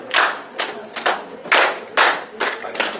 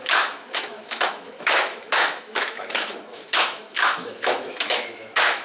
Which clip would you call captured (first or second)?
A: first